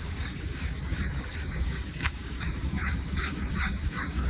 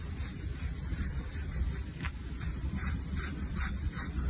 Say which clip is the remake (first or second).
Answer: first